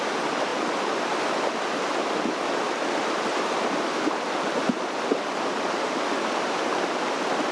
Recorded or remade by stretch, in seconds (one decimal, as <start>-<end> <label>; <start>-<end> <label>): 0.0-7.5 recorded